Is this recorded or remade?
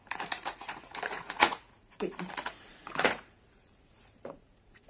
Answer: remade